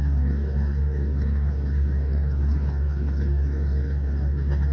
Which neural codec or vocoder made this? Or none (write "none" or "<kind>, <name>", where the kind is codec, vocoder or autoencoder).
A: codec, DAC